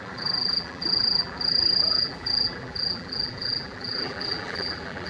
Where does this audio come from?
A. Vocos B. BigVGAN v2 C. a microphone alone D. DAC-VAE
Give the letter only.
B